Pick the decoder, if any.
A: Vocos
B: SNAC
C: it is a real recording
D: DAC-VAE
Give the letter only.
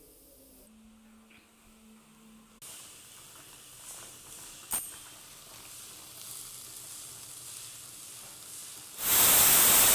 C